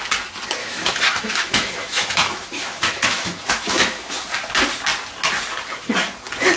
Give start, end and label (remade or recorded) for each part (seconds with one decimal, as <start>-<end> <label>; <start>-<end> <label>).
0.0-0.6 recorded; 0.6-4.1 remade; 4.1-6.6 recorded